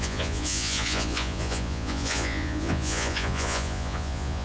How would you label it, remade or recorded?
remade